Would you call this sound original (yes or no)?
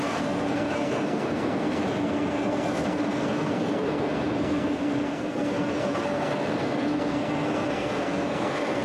no